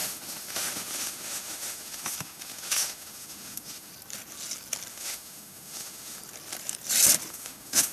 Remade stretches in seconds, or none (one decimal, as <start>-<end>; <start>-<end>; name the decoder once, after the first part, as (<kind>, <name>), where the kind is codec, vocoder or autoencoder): 0.0-3.9 (autoencoder, DAC-VAE); 4.9-6.2; 7.3-7.9